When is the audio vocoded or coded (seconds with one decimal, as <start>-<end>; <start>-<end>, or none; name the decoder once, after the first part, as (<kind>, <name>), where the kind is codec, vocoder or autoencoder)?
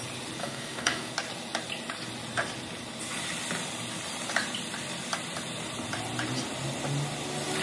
0.4-1.1 (codec, DAC)